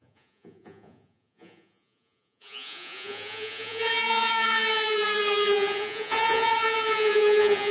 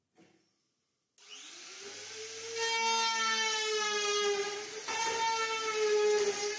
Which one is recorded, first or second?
second